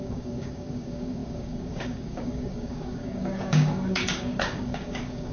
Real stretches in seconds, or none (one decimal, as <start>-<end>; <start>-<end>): none